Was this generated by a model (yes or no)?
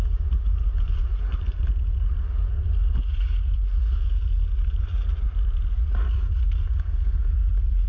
no